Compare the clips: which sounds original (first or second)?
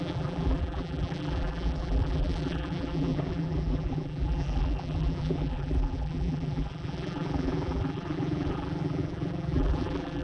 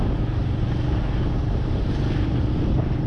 second